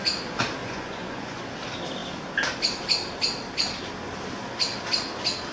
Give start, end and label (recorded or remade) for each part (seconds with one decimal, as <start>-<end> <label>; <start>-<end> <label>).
0.0-0.6 recorded; 0.6-1.4 remade; 1.4-5.5 recorded